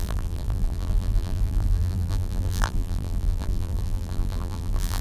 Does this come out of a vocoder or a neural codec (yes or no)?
yes